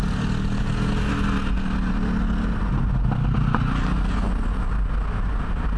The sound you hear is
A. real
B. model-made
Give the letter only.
A